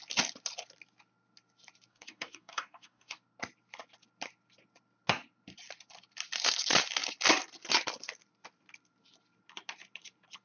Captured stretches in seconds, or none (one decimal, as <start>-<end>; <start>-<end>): 0.0-1.9; 3.2-10.4